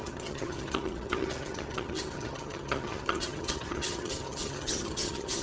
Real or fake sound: fake